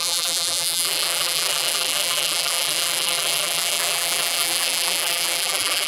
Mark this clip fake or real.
fake